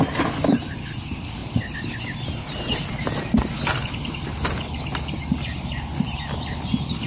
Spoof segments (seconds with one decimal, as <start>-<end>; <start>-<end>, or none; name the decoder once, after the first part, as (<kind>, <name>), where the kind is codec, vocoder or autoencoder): none